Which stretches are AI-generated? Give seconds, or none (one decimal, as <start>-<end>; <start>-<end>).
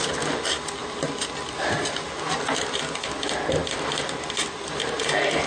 none